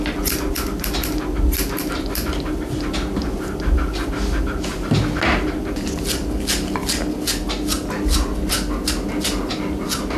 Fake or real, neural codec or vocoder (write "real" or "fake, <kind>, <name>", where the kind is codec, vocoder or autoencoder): real